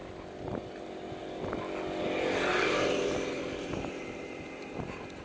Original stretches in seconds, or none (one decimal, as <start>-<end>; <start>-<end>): 0.0-2.5; 4.7-5.2